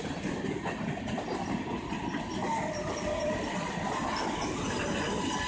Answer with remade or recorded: recorded